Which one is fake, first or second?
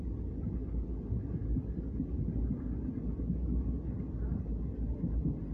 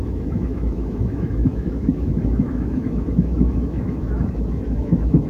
second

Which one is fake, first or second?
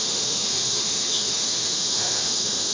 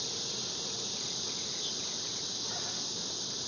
first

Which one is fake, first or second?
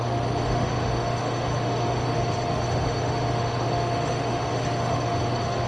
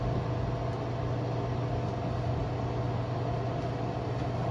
first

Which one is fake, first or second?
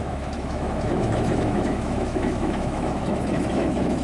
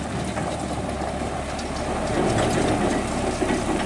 first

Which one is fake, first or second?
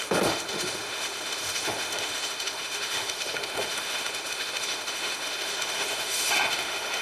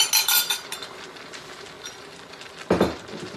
first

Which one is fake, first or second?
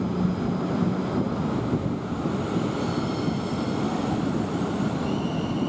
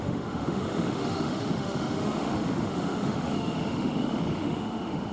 second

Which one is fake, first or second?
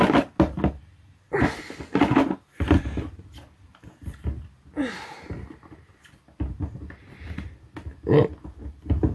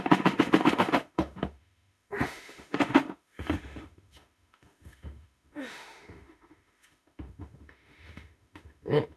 second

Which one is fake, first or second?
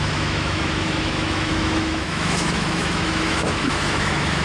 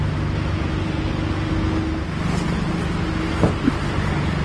first